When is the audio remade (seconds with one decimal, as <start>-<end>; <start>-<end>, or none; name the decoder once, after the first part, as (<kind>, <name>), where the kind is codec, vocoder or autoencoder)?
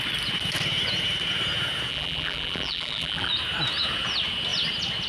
1.9-3.3 (vocoder, BigVGAN v2)